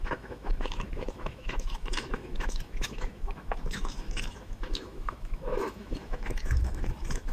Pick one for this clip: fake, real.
fake